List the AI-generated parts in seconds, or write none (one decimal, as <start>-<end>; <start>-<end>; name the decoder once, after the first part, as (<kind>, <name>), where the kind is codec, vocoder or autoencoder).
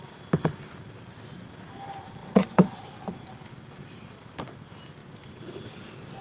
2.2-2.8 (vocoder, WaveNeXt)